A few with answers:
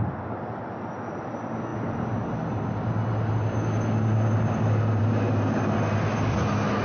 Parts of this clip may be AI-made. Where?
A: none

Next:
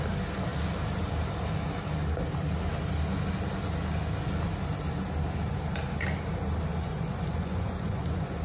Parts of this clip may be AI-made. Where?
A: 6.7-8.4 (vocoder, Vocos)